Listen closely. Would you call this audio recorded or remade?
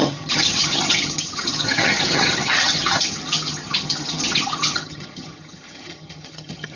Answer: remade